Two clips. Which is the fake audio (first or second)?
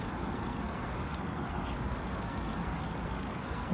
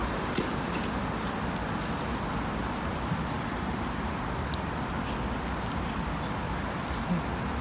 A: first